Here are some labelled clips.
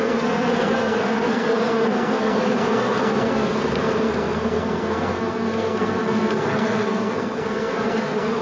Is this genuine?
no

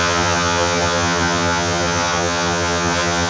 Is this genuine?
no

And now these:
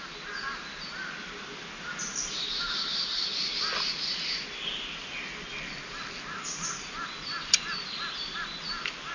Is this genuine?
yes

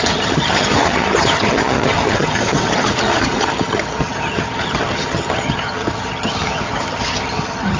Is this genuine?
no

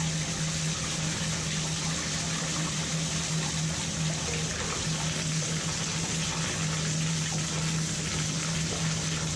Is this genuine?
yes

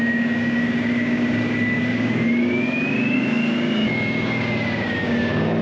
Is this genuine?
no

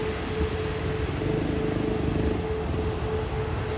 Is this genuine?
yes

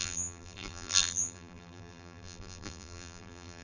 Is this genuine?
no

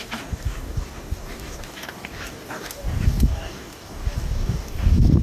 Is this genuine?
no